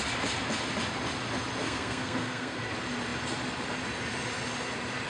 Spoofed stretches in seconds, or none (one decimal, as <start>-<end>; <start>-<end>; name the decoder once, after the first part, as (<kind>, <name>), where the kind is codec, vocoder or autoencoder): 1.6-2.6 (codec, SNAC)